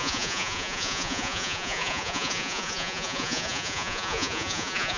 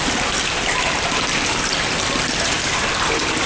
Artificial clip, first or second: first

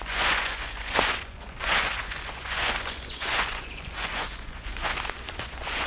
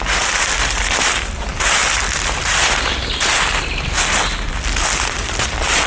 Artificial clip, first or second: first